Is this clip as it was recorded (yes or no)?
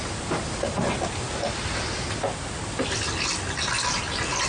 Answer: yes